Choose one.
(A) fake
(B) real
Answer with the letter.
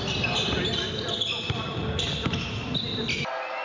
B